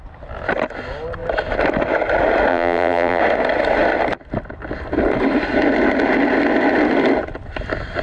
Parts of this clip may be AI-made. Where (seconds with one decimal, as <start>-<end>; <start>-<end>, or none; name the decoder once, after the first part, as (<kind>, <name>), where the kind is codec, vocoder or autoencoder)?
2.5-3.2 (vocoder, BigVGAN v2)